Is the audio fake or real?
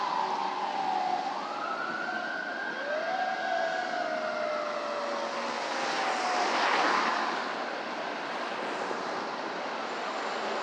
real